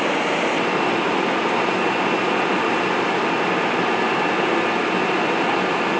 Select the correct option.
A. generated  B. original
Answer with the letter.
B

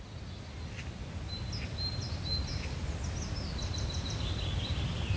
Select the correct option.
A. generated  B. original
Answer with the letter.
B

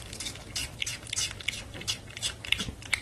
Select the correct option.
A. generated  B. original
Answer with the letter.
B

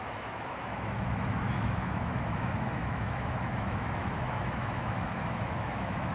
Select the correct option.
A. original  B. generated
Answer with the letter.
B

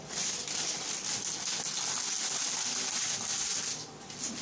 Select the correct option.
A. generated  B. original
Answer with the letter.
B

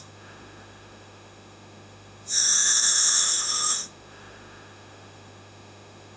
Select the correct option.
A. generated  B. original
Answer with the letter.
A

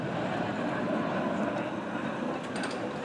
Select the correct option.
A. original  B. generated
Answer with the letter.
A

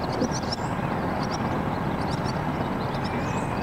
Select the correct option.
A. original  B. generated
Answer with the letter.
A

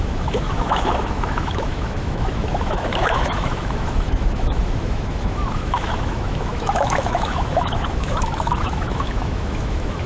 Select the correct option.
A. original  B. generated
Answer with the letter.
B